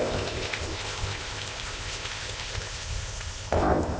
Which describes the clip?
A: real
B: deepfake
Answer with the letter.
B